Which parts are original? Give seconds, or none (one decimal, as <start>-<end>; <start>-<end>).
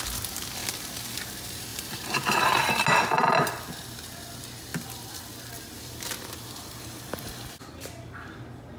0.0-1.7; 2.7-8.8